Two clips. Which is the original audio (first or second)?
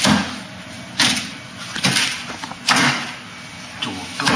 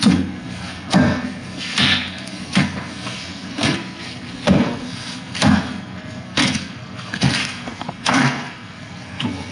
first